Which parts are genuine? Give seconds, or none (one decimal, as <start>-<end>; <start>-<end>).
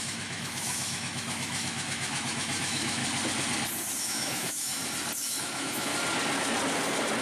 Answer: 3.0-4.0; 4.8-5.4; 5.9-7.2